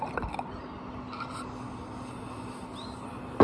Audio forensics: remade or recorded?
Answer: recorded